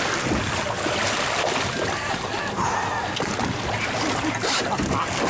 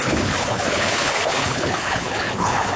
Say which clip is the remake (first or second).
second